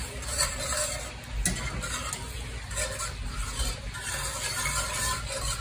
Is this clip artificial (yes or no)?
no